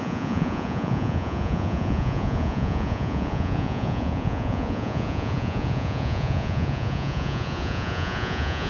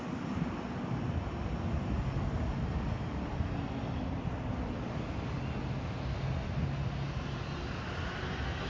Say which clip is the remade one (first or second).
first